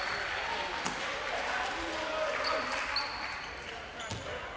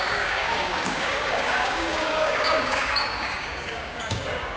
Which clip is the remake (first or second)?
second